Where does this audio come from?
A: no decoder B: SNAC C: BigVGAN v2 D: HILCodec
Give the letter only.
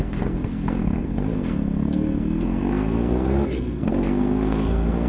B